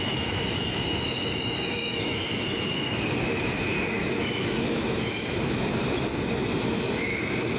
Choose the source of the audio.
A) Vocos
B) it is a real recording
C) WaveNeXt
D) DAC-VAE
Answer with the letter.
D